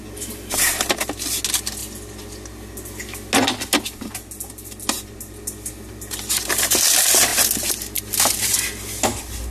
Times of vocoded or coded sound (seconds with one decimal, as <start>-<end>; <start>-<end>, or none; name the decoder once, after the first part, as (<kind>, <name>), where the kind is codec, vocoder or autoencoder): none